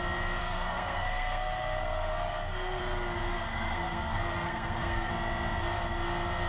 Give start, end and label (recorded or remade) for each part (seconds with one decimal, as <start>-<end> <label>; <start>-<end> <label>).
0.0-0.4 recorded; 0.4-2.8 remade; 2.8-3.5 recorded; 3.5-5.1 remade; 5.1-6.5 recorded